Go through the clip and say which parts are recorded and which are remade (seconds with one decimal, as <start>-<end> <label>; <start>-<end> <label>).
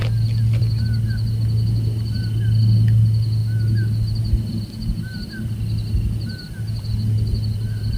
0.0-8.0 recorded